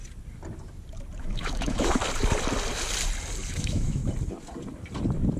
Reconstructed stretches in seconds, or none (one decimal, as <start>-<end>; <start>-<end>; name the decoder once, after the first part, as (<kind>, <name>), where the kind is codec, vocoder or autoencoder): 1.2-2.0 (autoencoder, DAC-VAE); 3.5-4.0